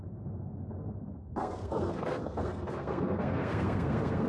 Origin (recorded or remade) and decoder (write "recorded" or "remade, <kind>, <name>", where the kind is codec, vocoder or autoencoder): remade, codec, SNAC